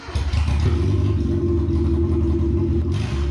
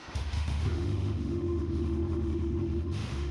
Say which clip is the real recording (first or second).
first